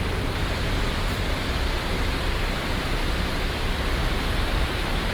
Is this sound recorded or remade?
remade